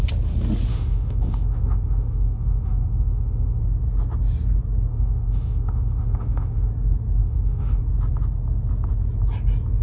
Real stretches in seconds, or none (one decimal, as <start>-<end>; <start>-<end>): 0.0-0.7; 3.6-4.9; 6.7-7.2; 7.8-9.8